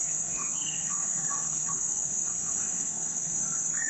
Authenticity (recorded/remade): remade